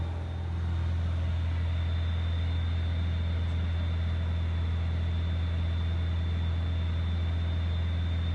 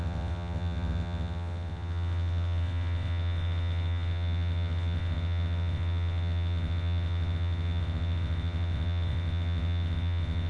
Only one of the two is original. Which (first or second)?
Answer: first